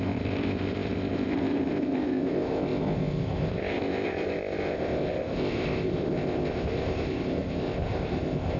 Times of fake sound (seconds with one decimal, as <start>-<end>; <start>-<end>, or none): 0.0-8.6